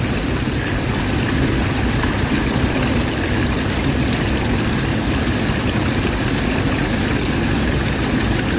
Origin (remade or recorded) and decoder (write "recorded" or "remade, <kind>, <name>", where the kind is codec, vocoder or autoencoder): remade, vocoder, BigVGAN v2